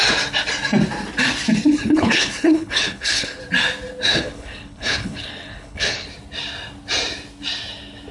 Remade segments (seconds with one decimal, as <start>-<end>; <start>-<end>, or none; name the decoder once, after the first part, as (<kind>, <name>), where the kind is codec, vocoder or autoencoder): 1.8-3.4 (codec, HILCodec); 4.1-6.1